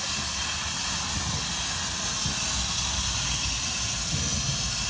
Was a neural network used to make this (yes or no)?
no